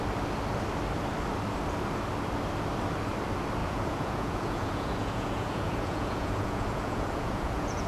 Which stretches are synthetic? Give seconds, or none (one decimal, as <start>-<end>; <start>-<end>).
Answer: 3.6-7.9